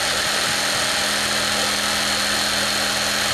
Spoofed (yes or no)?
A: no